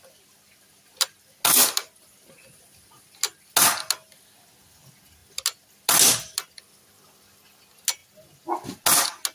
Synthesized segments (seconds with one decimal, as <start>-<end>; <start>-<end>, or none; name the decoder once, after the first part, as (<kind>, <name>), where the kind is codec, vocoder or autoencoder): none